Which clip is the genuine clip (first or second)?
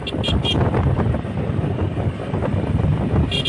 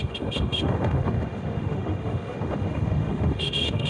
first